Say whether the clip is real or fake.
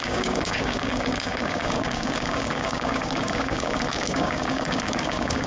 fake